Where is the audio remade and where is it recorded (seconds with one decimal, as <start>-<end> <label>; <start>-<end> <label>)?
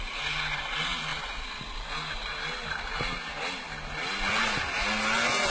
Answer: 0.0-5.5 recorded